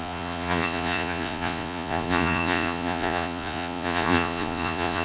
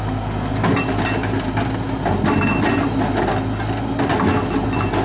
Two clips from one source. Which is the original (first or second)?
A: second